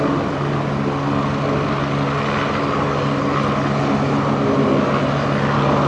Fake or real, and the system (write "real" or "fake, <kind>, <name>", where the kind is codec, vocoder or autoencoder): real